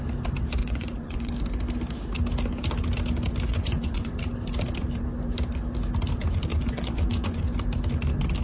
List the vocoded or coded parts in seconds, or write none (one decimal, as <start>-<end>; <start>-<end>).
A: 0.6-1.3; 3.5-4.1; 6.5-7.4